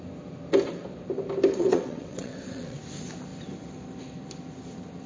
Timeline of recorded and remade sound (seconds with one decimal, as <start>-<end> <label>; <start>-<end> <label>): 0.0-1.5 recorded; 1.5-2.8 remade; 2.8-5.1 recorded

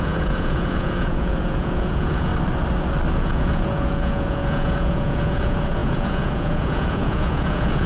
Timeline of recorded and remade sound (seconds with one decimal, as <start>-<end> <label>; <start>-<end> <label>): 0.0-2.3 remade; 2.3-3.1 recorded; 3.1-7.9 remade

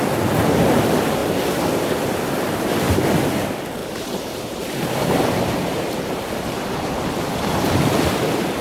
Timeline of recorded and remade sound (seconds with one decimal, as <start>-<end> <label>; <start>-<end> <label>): 0.0-3.8 recorded; 3.8-6.9 remade; 6.9-8.6 recorded

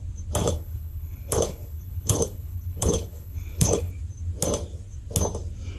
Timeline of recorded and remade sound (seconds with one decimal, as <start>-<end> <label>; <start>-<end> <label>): 0.0-0.4 recorded; 0.4-3.9 remade; 3.9-5.8 recorded

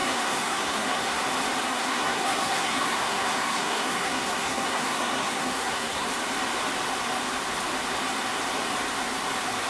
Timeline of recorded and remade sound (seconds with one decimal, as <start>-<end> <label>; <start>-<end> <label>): 0.0-1.2 remade; 1.2-1.6 recorded; 1.6-6.1 remade; 6.1-9.7 recorded

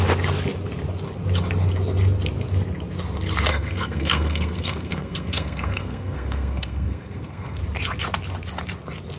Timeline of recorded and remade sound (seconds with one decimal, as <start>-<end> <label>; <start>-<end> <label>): 0.0-3.5 recorded; 3.5-7.6 remade; 7.6-9.2 recorded

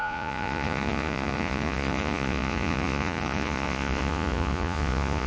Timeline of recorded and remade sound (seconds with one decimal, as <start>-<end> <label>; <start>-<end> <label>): 0.0-5.3 remade